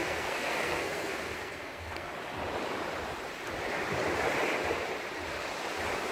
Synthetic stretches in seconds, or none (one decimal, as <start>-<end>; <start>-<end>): 0.0-2.1